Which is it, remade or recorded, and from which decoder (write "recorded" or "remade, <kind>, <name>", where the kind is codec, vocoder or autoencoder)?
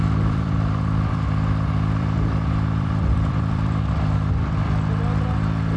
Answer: remade, vocoder, BigVGAN v2